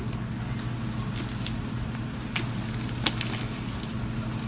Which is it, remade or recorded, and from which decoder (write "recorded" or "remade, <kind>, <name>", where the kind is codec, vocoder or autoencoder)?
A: recorded